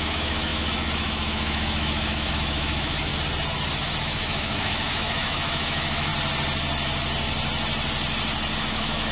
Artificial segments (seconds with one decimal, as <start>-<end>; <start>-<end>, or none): 0.0-3.1; 4.0-6.1; 8.6-9.1